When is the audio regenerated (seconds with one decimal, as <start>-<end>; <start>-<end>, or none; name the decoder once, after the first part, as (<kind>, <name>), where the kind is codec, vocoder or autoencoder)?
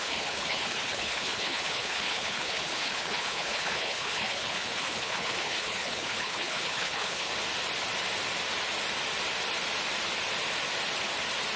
0.0-7.3 (codec, HILCodec)